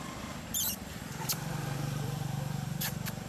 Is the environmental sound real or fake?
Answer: fake